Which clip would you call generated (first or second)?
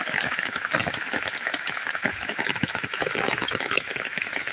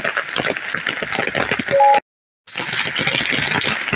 first